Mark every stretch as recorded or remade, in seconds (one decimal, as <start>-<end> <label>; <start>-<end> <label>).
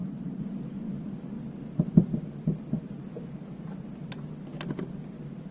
0.0-5.5 recorded